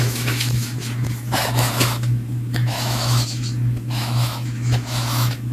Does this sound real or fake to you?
fake